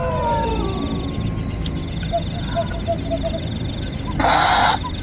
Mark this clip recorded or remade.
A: recorded